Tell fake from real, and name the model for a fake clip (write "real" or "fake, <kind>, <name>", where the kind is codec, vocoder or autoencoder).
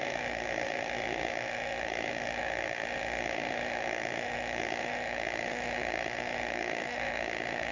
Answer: fake, autoencoder, DAC-VAE